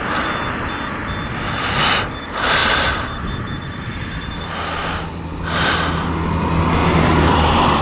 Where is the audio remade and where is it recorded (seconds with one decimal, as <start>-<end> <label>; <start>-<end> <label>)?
0.0-2.6 recorded; 2.6-4.5 remade; 4.5-6.8 recorded; 6.8-7.8 remade